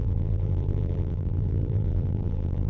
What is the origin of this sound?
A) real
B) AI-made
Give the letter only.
B